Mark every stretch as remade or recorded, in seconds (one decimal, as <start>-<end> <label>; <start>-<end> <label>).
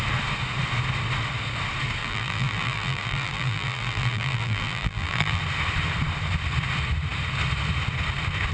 0.0-2.0 recorded; 2.0-5.4 remade; 5.4-8.5 recorded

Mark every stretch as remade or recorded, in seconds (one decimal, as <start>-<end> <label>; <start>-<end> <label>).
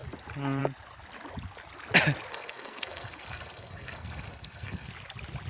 0.0-2.3 recorded; 2.3-4.9 remade; 4.9-5.5 recorded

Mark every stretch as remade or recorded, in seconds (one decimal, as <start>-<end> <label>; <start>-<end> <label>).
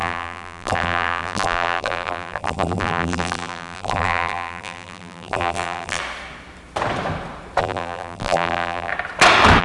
0.0-6.0 remade; 6.0-7.6 recorded; 7.6-8.9 remade; 8.9-9.6 recorded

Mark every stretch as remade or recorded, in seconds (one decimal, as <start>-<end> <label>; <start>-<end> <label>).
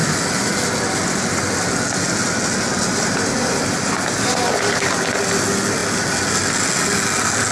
0.0-7.5 recorded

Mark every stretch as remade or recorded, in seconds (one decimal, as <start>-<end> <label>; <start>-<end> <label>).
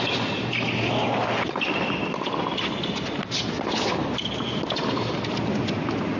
0.0-6.2 recorded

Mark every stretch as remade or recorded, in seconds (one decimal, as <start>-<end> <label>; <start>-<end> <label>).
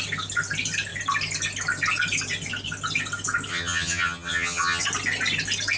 0.0-3.5 recorded; 3.5-4.8 remade; 4.8-5.8 recorded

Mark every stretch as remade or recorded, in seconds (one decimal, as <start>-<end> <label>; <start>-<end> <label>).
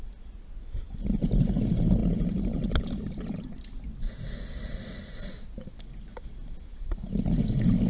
0.0-7.9 recorded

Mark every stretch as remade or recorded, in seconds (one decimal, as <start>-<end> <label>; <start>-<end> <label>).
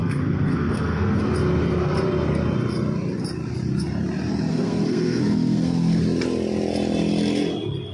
0.0-1.2 remade; 1.2-4.5 recorded; 4.5-6.0 remade; 6.0-7.9 recorded